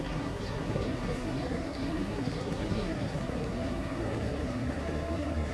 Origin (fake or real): fake